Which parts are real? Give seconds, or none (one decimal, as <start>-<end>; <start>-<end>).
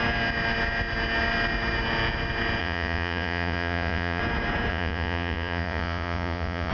0.0-2.6; 4.2-4.7